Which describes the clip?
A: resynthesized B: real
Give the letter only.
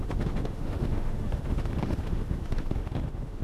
A